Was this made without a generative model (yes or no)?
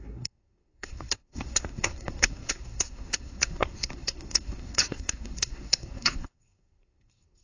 no